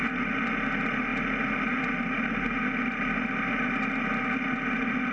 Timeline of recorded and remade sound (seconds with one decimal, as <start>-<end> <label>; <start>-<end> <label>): 0.0-5.1 recorded